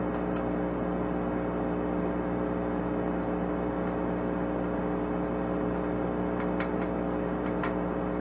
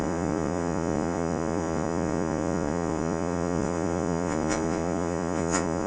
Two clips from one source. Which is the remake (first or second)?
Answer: second